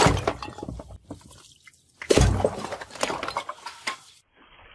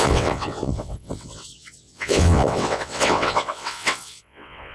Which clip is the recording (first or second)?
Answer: first